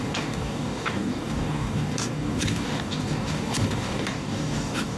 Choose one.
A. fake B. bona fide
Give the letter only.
A